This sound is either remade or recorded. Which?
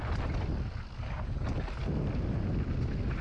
recorded